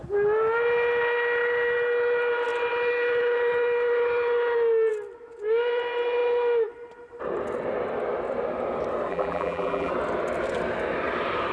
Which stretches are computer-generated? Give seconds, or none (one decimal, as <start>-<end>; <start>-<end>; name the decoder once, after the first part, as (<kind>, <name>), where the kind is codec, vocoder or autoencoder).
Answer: 9.1-9.9 (vocoder, BigVGAN v2)